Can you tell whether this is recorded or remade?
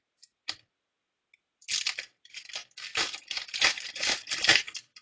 recorded